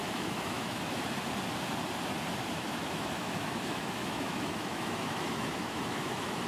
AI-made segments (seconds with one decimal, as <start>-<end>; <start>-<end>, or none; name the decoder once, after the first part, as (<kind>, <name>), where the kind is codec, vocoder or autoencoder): 0.0-0.9 (autoencoder, DAC-VAE); 2.5-6.5